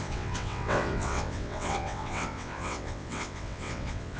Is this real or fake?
fake